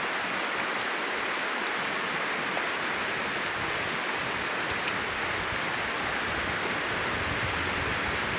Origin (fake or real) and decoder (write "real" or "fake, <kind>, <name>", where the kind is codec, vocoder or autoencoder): real